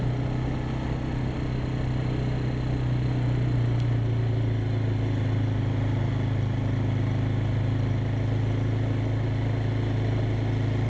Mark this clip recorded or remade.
recorded